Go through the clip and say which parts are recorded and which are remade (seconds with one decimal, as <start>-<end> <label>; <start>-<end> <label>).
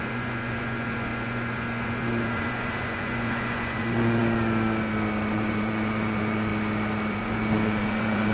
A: 0.0-4.2 remade; 4.2-5.3 recorded; 5.3-6.5 remade; 6.5-7.1 recorded; 7.1-8.3 remade